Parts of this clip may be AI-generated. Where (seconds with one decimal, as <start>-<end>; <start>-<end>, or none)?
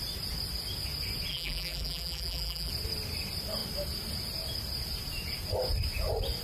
1.3-2.7